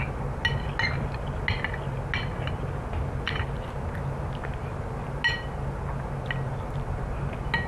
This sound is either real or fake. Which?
real